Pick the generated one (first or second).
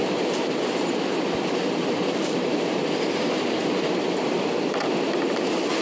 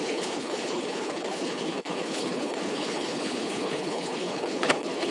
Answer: second